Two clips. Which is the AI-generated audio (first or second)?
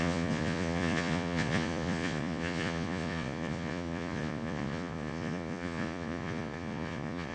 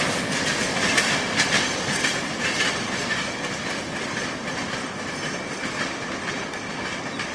first